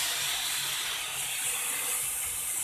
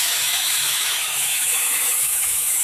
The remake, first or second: second